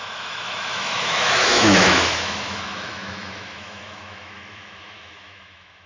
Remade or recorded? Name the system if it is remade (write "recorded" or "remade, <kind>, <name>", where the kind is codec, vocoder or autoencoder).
remade, autoencoder, DAC-VAE